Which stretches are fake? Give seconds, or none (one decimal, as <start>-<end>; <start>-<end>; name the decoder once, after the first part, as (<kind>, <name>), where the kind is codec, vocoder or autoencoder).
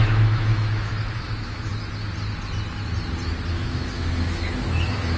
0.0-1.7 (autoencoder, DAC-VAE); 3.5-5.2